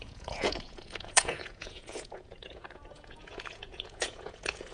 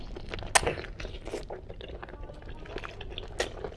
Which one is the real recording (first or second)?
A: second